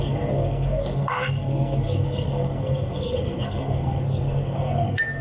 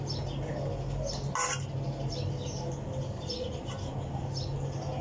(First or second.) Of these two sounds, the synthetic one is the first